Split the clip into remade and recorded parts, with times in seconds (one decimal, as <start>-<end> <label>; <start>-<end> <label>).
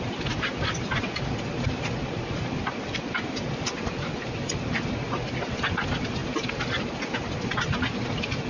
0.0-8.5 recorded